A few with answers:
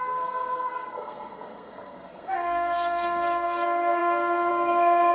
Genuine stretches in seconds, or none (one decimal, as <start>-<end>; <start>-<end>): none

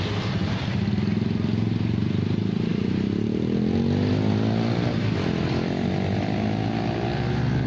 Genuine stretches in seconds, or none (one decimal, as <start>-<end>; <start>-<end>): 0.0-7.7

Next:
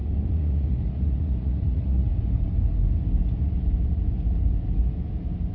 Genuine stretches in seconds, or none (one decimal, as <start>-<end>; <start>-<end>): 2.1-5.5

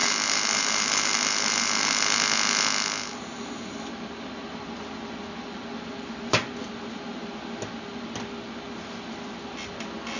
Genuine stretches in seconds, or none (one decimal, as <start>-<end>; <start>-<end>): 3.6-10.2